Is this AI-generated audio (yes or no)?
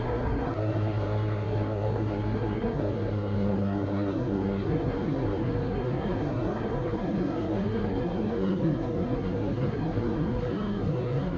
yes